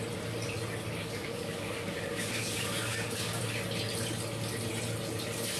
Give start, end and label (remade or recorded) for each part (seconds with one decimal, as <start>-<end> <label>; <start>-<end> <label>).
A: 0.0-1.0 recorded; 1.0-3.4 remade; 3.4-5.6 recorded